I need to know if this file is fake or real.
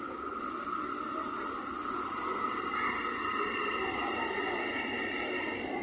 real